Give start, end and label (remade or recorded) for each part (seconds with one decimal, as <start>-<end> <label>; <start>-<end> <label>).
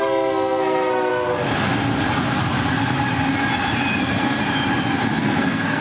0.0-1.1 remade; 1.1-4.0 recorded; 4.0-4.4 remade; 4.4-5.2 recorded; 5.2-5.8 remade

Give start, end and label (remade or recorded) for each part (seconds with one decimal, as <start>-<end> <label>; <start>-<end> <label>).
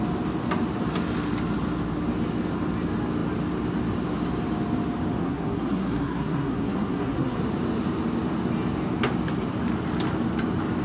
0.0-5.2 recorded; 5.2-7.4 remade; 7.4-10.8 recorded